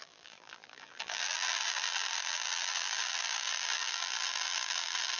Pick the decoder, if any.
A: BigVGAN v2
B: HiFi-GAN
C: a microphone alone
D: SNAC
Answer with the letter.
A